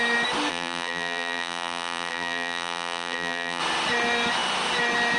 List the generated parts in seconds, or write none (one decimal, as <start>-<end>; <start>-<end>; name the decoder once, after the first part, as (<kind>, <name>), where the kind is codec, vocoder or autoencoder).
0.5-3.6 (vocoder, BigVGAN v2)